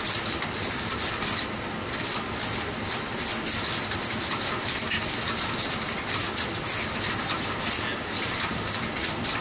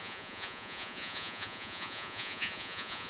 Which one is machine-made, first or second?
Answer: second